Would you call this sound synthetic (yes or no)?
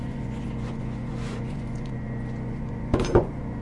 yes